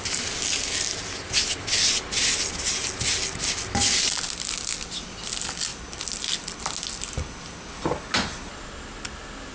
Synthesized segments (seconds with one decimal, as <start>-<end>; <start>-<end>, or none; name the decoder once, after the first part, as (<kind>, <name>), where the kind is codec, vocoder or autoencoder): none